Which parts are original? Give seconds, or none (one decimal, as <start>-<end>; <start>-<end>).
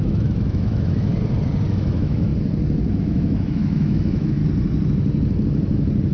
1.1-1.7; 2.3-3.0; 4.4-6.1